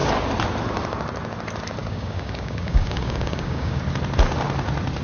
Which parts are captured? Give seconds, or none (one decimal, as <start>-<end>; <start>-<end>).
0.0-1.8; 3.8-5.0